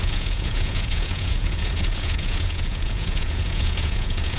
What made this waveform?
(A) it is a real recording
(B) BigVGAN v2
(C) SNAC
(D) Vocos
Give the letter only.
D